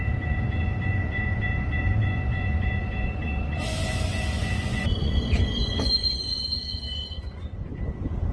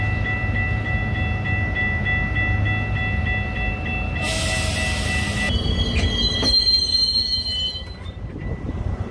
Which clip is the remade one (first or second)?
first